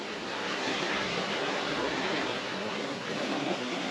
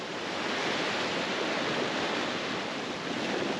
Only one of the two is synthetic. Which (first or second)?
first